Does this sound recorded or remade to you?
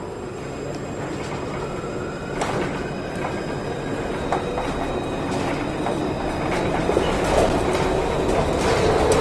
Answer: recorded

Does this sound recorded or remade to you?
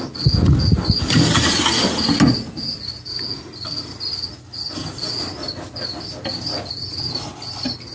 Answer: recorded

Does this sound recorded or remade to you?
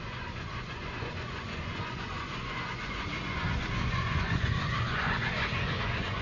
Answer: remade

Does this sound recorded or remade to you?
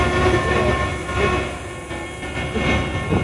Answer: recorded